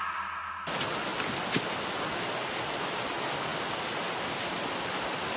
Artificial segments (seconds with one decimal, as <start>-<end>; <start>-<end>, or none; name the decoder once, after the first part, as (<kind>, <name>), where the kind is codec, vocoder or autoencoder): none